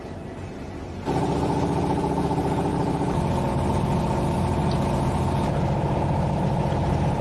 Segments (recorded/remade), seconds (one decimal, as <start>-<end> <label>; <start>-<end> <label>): 0.0-7.2 recorded

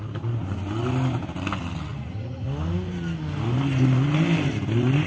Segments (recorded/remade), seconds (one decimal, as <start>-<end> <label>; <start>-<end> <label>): 0.0-5.1 recorded

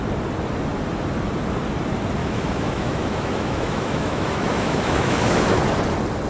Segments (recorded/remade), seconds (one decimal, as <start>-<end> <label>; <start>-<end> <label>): 0.0-2.2 recorded; 2.2-5.6 remade; 5.6-6.3 recorded

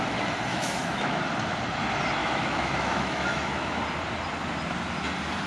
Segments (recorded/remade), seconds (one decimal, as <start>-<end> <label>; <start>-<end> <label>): 0.0-0.5 recorded; 0.5-1.2 remade; 1.2-2.2 recorded; 2.2-3.8 remade; 3.8-5.5 recorded